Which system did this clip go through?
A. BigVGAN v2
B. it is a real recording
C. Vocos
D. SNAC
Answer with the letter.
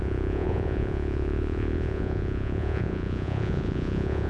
C